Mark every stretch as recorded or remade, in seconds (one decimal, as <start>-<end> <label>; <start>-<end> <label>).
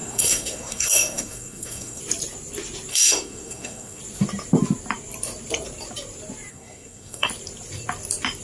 0.0-2.0 remade; 2.0-2.9 recorded; 2.9-4.0 remade; 4.0-6.5 recorded; 6.5-7.3 remade; 7.3-8.4 recorded